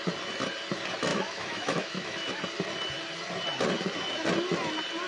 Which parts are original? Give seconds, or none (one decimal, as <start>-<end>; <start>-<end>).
0.0-1.1; 2.3-5.1